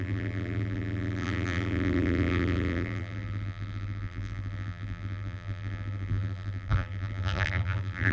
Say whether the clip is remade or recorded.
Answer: remade